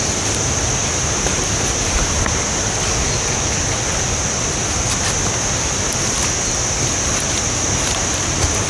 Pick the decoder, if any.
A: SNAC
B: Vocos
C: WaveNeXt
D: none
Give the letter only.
D